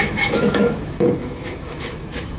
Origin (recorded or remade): remade